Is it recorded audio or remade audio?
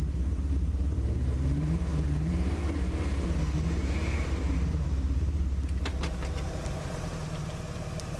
remade